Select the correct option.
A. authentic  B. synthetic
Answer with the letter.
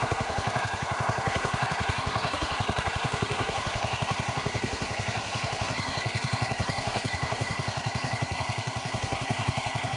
B